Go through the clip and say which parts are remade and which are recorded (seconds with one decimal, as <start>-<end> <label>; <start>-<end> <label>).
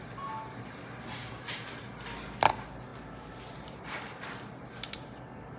0.0-5.6 recorded